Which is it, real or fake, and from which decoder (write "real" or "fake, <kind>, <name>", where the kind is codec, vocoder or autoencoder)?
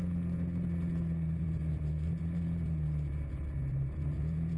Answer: fake, vocoder, Vocos